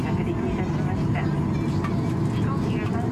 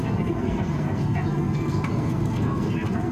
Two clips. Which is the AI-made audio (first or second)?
second